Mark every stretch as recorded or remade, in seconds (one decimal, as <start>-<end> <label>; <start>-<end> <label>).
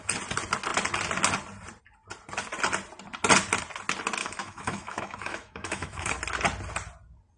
0.0-4.2 recorded; 4.2-6.1 remade; 6.1-7.4 recorded